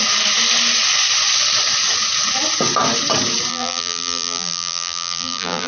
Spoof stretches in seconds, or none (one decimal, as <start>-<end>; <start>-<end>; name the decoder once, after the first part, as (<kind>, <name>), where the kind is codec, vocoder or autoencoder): 3.5-5.7 (vocoder, BigVGAN v2)